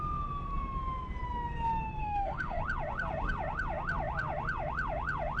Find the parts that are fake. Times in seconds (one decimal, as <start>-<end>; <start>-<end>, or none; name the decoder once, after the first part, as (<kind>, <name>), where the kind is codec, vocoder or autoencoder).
2.0-2.6 (autoencoder, DAC-VAE)